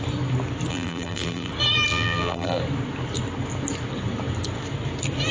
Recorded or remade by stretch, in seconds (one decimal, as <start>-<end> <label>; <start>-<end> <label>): 0.0-0.7 recorded; 0.7-1.5 remade; 1.5-1.9 recorded; 1.9-2.6 remade; 2.6-5.3 recorded